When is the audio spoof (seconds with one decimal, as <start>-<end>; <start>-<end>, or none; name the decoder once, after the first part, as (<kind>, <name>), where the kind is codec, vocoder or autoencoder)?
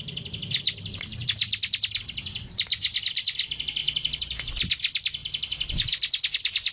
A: 1.1-2.5 (vocoder, BigVGAN v2)